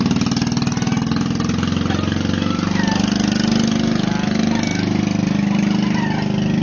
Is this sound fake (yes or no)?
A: no